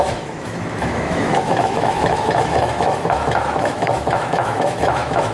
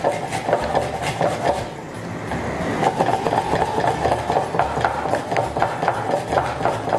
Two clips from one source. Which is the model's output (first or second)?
first